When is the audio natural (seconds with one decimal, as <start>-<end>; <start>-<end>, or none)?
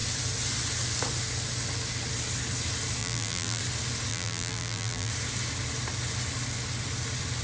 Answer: 0.0-3.0; 3.6-4.1; 5.1-7.4